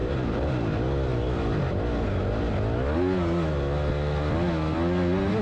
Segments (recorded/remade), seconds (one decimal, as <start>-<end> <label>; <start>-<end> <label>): 0.0-0.5 remade; 0.5-5.4 recorded